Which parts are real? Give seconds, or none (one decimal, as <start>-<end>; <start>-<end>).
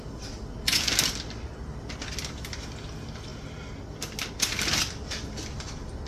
0.0-6.1